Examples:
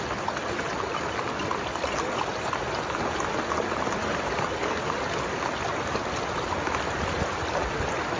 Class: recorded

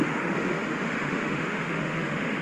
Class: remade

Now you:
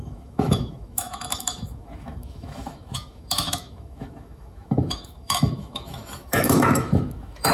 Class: remade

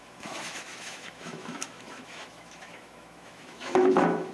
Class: remade